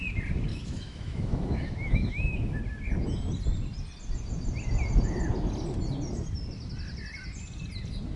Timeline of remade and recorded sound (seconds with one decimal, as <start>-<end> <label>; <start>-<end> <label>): 0.0-0.5 recorded; 0.5-2.6 remade; 2.6-8.2 recorded